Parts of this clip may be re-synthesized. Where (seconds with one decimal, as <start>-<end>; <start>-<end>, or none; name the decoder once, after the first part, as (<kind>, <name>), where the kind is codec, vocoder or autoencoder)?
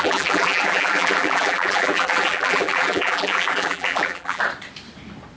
0.0-4.4 (vocoder, BigVGAN v2)